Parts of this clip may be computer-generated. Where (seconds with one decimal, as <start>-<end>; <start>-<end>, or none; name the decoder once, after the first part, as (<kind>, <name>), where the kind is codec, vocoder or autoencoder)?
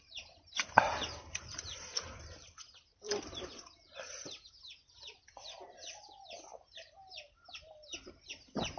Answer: 0.0-8.8 (vocoder, BigVGAN v2)